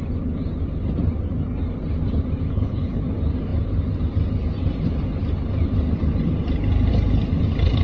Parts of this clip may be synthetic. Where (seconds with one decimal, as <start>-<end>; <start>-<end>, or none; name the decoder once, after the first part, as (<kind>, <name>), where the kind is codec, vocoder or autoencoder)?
2.5-3.0 (codec, HILCodec)